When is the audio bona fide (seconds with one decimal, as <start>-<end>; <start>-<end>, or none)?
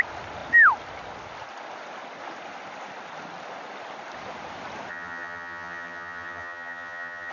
0.0-4.9